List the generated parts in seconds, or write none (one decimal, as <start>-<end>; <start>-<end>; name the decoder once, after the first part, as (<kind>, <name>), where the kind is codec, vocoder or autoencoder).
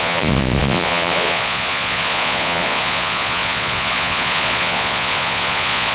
0.0-5.9 (vocoder, Vocos)